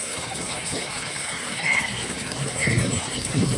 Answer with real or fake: fake